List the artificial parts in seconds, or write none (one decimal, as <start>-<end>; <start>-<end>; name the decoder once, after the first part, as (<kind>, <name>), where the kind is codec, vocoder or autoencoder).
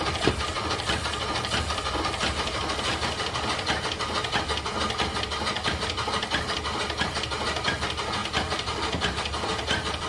none